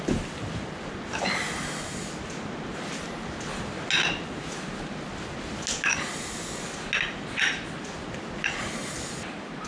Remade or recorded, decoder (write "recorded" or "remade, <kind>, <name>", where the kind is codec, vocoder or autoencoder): recorded